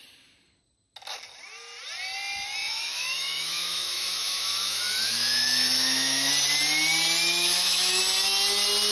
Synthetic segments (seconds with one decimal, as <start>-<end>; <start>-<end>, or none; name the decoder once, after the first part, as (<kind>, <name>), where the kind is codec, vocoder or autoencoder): 2.6-6.3 (autoencoder, DAC-VAE); 7.4-8.0